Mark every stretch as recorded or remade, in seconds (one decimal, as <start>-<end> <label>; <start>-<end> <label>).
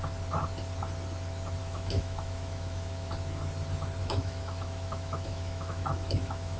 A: 0.0-1.6 recorded; 1.6-3.1 remade; 3.1-4.0 recorded; 4.0-6.6 remade